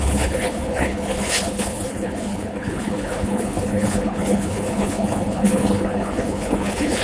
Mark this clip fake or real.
fake